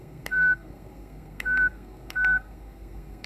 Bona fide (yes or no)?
no